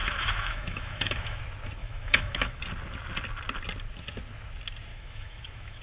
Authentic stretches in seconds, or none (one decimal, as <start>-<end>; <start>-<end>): 1.4-1.8; 2.6-4.9